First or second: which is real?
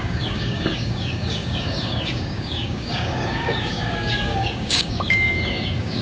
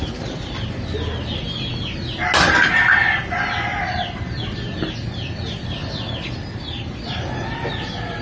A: second